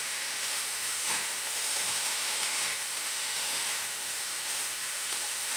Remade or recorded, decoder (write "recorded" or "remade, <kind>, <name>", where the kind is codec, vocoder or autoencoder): remade, autoencoder, DAC-VAE